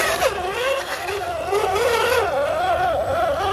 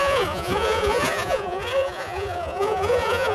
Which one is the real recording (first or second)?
first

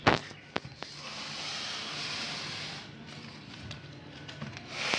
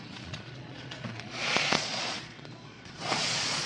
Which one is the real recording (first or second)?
first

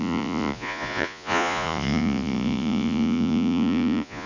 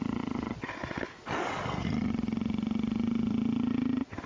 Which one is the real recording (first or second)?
second